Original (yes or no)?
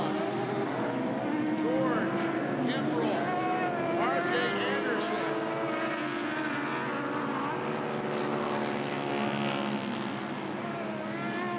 yes